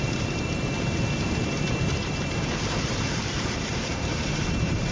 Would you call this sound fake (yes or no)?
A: yes